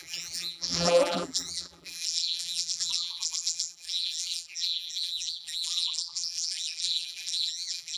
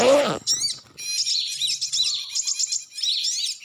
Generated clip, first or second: first